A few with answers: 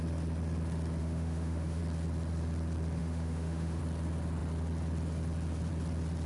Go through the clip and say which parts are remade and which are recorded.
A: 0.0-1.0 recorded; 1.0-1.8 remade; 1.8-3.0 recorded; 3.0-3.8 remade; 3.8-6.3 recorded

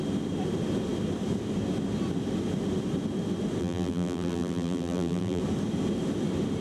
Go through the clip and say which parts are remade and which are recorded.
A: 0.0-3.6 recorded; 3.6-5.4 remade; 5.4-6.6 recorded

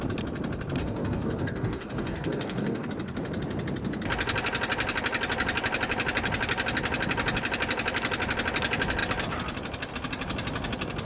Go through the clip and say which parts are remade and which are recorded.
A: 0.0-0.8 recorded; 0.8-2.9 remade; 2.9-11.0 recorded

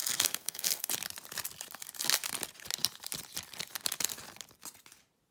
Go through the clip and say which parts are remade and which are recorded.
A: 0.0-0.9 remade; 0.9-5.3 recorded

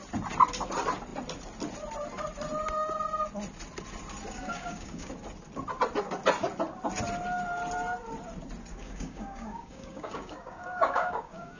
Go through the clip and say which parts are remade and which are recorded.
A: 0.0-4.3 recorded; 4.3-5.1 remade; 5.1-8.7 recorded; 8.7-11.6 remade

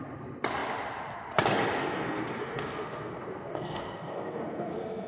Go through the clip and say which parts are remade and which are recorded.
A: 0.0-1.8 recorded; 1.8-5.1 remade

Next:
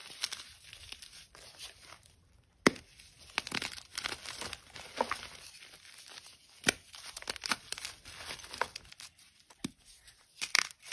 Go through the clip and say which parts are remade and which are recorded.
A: 0.0-10.9 recorded

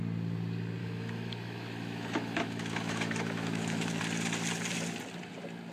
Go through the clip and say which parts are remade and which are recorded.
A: 0.0-0.8 recorded; 0.8-4.0 remade; 4.0-5.7 recorded